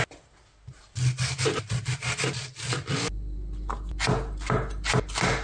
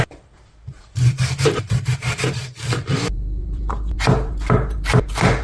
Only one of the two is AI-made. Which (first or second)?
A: second